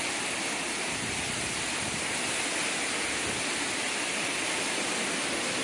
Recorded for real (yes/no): yes